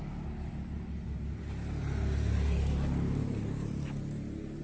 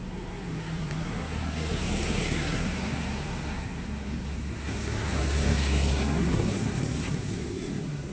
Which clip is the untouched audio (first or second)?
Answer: first